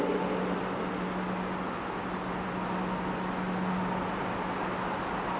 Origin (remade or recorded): recorded